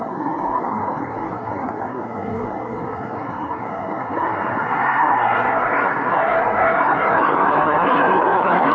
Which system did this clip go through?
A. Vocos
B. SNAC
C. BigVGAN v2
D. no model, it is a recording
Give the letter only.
B